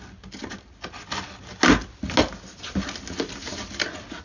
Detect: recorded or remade recorded